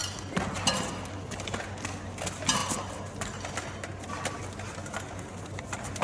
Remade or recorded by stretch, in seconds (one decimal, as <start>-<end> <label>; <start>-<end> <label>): 0.0-6.0 recorded